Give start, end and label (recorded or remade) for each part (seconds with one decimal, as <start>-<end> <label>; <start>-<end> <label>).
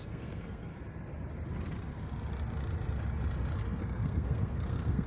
0.0-0.7 remade; 0.7-3.8 recorded; 3.8-5.1 remade